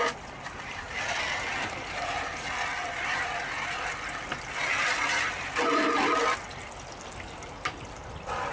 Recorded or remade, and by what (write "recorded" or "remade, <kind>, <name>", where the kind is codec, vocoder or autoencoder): remade, vocoder, BigVGAN v2